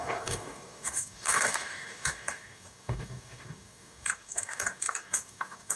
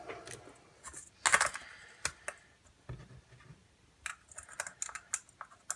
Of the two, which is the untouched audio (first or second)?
second